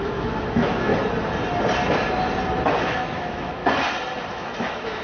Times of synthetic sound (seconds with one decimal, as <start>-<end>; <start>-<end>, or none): 0.0-0.9; 2.8-3.6; 4.3-5.0